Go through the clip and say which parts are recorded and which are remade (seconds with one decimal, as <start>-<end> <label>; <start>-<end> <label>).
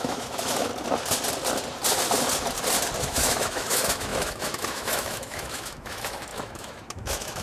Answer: 0.0-0.7 remade; 0.7-3.0 recorded; 3.0-7.4 remade